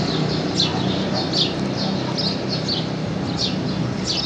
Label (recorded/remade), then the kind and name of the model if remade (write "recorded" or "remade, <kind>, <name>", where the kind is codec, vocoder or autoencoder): recorded